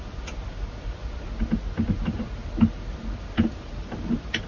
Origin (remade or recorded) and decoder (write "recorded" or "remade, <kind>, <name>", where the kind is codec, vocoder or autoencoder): recorded